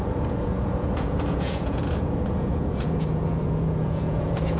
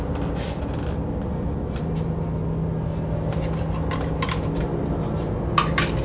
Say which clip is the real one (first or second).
second